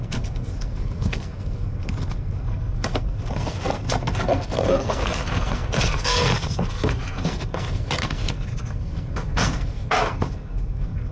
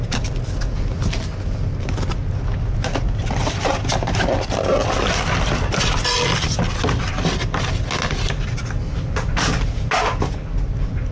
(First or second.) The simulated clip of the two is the first